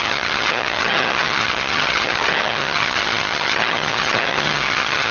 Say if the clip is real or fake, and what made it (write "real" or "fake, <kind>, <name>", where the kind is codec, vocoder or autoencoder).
fake, vocoder, HiFi-GAN